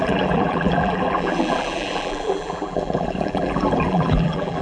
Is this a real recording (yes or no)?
no